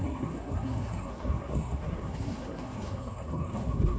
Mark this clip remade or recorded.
remade